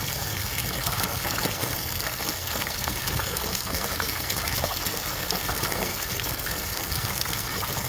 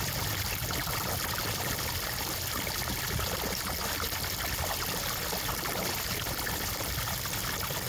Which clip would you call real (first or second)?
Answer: second